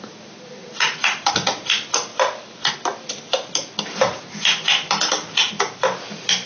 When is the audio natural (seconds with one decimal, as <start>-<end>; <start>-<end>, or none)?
0.0-0.6; 1.3-6.5